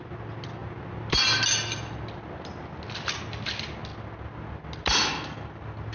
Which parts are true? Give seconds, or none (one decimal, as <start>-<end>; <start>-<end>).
0.0-5.9